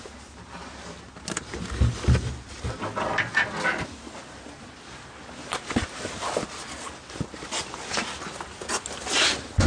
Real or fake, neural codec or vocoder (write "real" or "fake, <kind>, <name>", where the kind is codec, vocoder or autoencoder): real